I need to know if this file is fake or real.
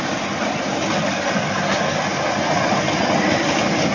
real